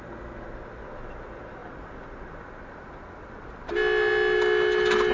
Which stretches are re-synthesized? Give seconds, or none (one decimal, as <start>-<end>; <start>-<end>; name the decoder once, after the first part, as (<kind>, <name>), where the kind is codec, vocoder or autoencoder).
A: none